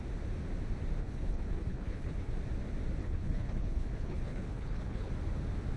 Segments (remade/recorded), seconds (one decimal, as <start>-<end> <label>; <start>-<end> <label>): 0.0-1.0 recorded; 1.0-2.3 remade; 2.3-3.0 recorded; 3.0-5.1 remade; 5.1-5.8 recorded